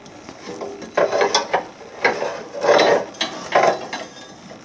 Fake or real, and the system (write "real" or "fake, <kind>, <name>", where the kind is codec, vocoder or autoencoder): real